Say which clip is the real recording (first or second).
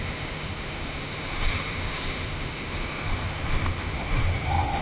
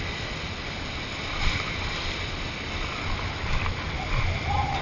second